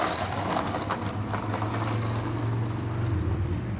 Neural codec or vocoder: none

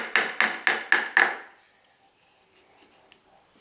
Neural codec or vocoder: none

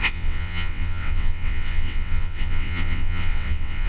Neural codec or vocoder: vocoder, WaveNeXt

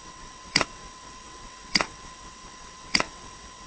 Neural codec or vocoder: vocoder, WaveNeXt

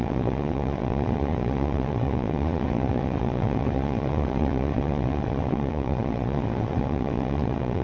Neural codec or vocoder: vocoder, WaveNeXt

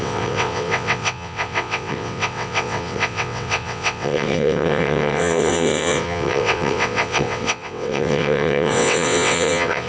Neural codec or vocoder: vocoder, WaveNeXt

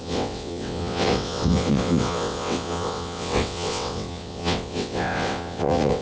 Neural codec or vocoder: vocoder, WaveNeXt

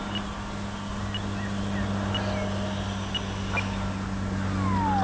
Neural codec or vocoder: none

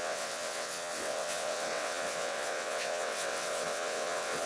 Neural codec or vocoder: vocoder, WaveNeXt